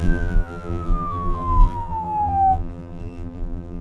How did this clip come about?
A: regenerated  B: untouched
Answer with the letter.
A